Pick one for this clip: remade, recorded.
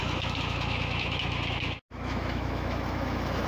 remade